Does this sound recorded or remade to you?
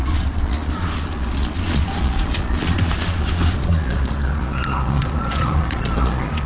remade